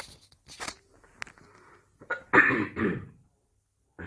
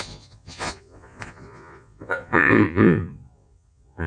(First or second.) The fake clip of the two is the second